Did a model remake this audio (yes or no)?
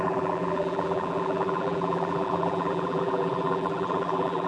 yes